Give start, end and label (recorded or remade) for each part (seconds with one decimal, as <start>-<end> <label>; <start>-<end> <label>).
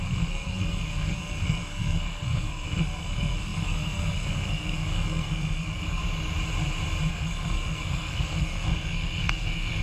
0.0-6.0 remade; 6.0-7.1 recorded; 7.1-9.8 remade